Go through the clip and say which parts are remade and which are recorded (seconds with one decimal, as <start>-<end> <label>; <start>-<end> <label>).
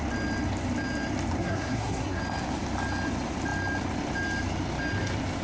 0.0-1.4 recorded; 1.4-2.2 remade; 2.2-5.4 recorded